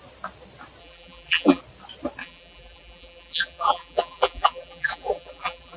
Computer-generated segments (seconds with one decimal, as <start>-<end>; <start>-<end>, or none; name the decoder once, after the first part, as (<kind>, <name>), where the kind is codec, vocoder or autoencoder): 0.8-1.6 (vocoder, BigVGAN v2); 2.2-5.8